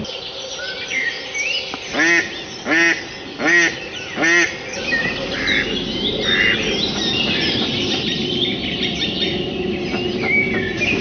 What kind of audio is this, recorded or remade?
recorded